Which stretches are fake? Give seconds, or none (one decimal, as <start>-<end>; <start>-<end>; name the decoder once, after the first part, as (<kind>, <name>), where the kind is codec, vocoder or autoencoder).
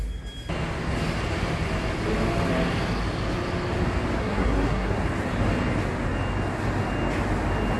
4.2-5.0 (codec, SNAC)